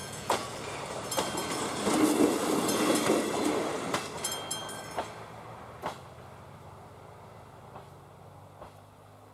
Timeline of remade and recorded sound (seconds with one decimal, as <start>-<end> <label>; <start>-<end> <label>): 0.0-0.6 remade; 0.6-9.3 recorded